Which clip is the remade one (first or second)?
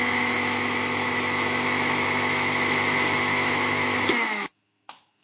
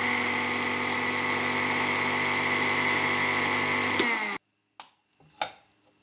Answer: first